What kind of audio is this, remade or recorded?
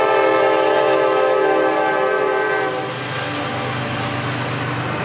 recorded